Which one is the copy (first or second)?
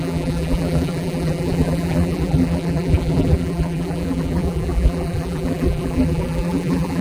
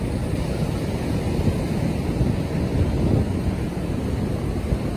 first